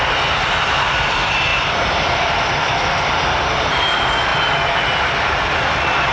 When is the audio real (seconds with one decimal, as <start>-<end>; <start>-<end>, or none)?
0.0-1.5; 3.7-4.3; 5.4-6.1